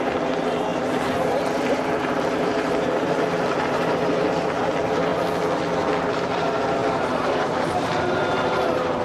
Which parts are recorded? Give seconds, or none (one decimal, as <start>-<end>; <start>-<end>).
5.1-6.0